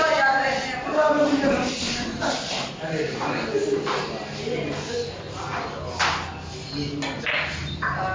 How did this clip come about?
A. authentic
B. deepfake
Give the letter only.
A